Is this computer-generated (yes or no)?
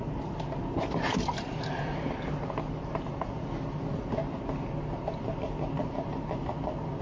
no